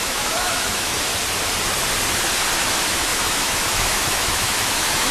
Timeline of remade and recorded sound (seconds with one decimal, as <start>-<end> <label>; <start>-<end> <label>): 0.0-1.1 remade; 1.1-2.6 recorded; 2.6-5.1 remade